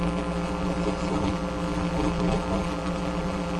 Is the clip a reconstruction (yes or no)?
yes